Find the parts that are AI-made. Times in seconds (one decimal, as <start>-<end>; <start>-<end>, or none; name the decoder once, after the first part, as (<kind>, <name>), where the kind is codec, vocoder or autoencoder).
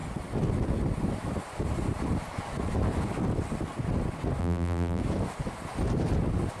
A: 4.4-5.0 (vocoder, BigVGAN v2)